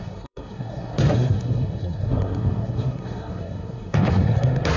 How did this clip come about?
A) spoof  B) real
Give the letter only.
A